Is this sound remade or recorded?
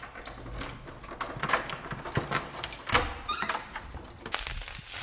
recorded